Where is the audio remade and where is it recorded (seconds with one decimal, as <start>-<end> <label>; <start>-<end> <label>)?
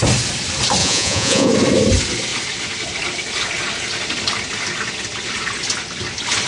0.0-0.8 recorded; 0.8-1.5 remade; 1.5-6.5 recorded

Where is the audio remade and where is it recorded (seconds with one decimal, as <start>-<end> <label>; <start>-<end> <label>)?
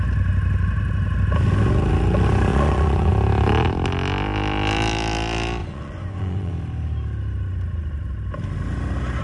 0.0-2.5 recorded; 2.5-3.1 remade; 3.1-5.6 recorded; 5.6-6.5 remade; 6.5-9.2 recorded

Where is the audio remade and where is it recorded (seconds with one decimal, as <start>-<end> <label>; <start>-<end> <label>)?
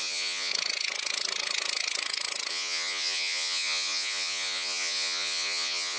0.0-0.5 remade; 0.5-2.5 recorded; 2.5-6.0 remade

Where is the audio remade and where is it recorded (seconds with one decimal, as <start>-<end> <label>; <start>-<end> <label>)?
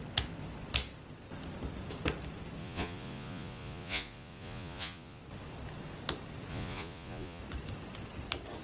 0.0-2.6 recorded; 2.6-5.2 remade; 5.2-6.5 recorded; 6.5-7.4 remade; 7.4-8.6 recorded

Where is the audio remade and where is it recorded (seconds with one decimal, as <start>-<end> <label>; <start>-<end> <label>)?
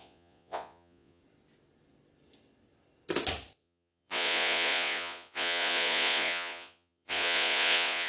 0.0-1.2 remade; 1.2-3.6 recorded; 3.6-8.1 remade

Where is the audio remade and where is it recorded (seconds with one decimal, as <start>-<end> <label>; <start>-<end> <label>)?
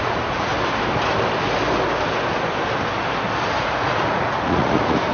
0.0-0.5 remade; 0.5-3.6 recorded; 3.6-5.1 remade